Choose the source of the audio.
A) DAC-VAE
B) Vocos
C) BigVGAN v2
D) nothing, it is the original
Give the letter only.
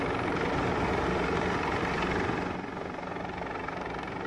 D